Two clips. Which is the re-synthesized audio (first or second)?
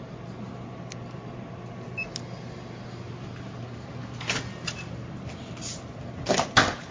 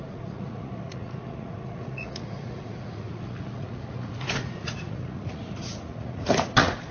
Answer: second